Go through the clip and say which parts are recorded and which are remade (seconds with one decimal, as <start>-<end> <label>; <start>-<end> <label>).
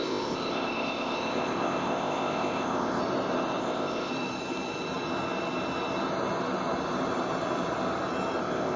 0.0-3.0 remade; 3.0-3.6 recorded; 3.6-4.1 remade; 4.1-8.4 recorded; 8.4-8.8 remade